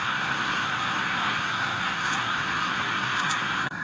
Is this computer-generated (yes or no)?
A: yes